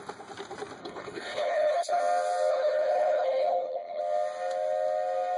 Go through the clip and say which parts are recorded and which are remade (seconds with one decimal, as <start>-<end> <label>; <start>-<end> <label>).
0.0-0.8 recorded; 0.8-2.0 remade; 2.0-2.5 recorded; 2.5-4.0 remade; 4.0-5.4 recorded